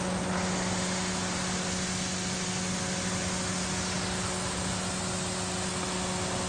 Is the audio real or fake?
real